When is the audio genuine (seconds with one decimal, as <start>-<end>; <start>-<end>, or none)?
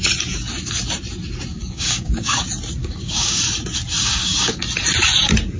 0.0-1.5; 2.4-2.8; 3.4-4.0; 4.6-5.6